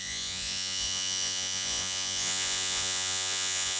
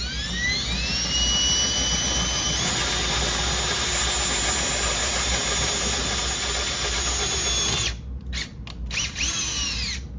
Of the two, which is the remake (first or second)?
first